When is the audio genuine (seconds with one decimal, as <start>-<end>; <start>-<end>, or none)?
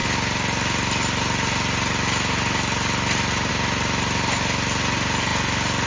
0.0-5.9